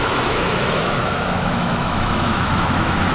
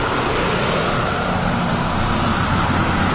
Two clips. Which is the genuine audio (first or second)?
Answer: second